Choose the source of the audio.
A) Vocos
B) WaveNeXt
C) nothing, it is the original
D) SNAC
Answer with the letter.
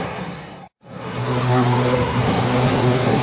D